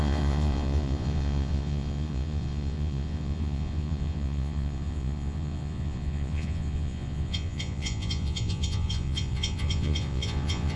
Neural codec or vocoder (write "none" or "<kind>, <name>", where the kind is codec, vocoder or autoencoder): vocoder, Vocos